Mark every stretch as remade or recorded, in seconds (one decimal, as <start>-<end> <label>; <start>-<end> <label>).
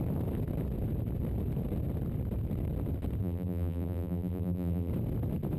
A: 0.0-3.2 recorded; 3.2-4.9 remade; 4.9-5.6 recorded